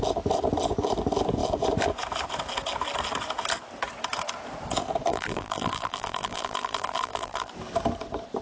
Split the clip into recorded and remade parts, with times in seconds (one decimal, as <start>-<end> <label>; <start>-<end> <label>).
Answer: 0.0-5.1 recorded; 5.1-7.5 remade; 7.5-8.4 recorded